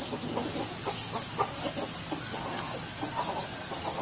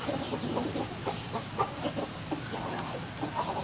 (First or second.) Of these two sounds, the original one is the first